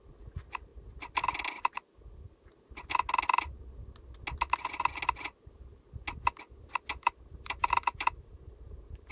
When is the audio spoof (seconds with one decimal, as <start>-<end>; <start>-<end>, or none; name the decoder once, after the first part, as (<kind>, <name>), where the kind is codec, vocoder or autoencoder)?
6.9-9.1 (vocoder, BigVGAN v2)